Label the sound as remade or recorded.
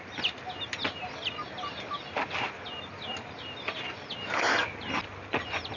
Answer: recorded